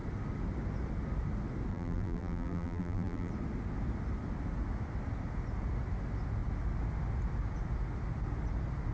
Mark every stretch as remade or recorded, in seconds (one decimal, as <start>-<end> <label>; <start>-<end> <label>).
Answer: 0.0-1.7 recorded; 1.7-3.3 remade; 3.3-8.9 recorded